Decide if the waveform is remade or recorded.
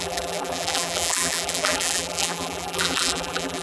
remade